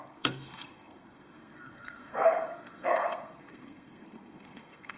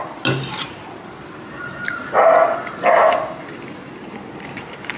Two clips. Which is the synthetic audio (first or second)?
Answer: first